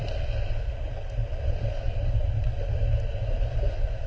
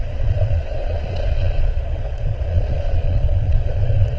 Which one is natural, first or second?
first